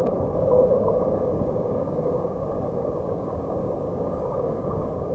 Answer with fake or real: fake